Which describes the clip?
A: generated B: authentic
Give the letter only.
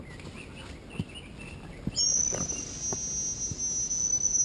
B